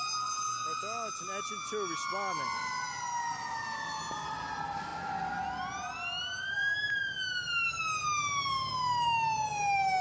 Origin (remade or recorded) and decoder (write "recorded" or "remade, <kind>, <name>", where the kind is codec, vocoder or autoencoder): recorded